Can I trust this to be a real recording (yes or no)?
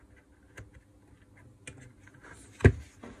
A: yes